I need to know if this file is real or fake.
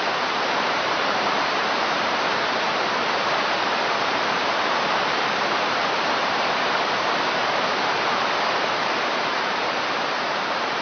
fake